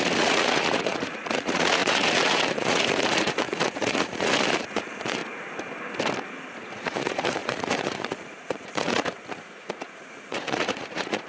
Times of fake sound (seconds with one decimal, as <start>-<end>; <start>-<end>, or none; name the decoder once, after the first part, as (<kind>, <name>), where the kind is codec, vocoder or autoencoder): 0.0-5.2 (vocoder, Vocos); 6.6-11.3